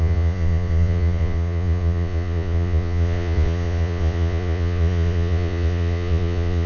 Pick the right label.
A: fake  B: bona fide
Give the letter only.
A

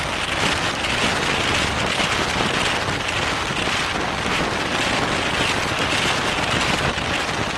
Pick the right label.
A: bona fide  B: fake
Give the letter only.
A